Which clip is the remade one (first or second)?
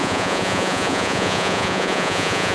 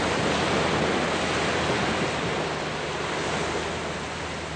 first